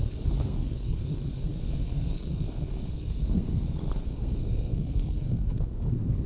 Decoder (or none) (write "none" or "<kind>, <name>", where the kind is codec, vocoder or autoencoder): codec, SNAC